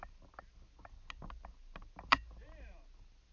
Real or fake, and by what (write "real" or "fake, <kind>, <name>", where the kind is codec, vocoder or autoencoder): real